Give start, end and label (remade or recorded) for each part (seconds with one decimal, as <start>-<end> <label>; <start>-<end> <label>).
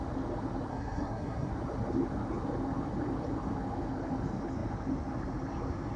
0.0-0.7 recorded; 0.7-1.5 remade; 1.5-6.0 recorded